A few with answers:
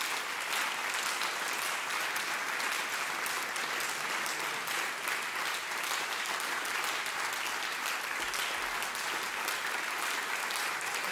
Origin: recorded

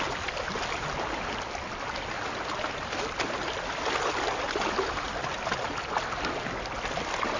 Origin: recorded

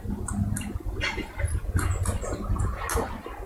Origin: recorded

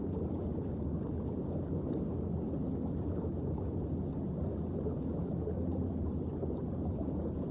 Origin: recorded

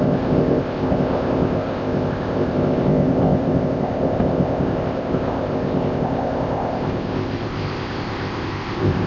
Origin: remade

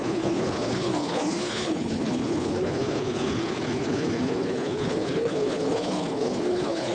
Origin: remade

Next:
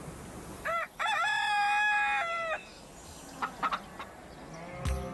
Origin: recorded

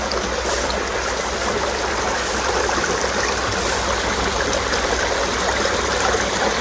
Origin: recorded